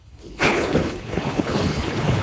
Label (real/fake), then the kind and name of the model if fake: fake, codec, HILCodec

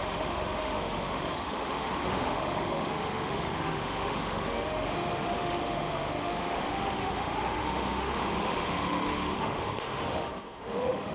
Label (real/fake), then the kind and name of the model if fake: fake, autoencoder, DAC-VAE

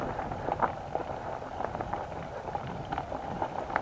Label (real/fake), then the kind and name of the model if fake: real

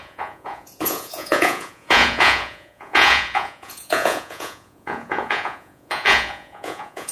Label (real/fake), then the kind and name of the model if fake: fake, vocoder, Vocos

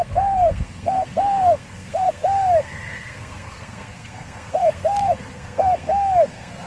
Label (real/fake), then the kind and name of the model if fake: fake, codec, SNAC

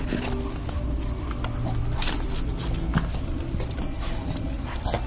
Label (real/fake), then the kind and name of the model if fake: real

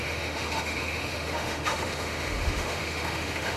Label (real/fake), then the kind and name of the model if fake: fake, autoencoder, DAC-VAE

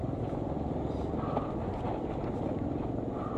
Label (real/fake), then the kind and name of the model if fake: real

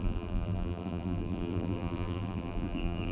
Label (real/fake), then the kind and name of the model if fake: fake, vocoder, BigVGAN v2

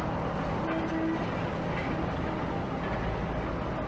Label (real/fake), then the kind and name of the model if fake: real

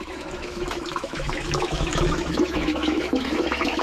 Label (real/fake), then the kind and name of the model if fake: fake, autoencoder, DAC-VAE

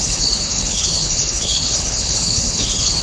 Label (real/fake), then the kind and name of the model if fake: fake, codec, HILCodec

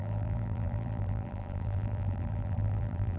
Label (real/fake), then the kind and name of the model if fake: fake, vocoder, BigVGAN v2